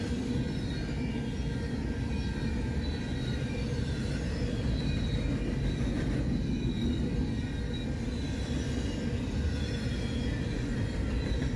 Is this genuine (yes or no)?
yes